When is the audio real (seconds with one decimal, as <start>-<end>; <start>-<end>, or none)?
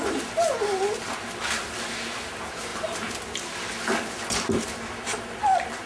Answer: 0.0-5.9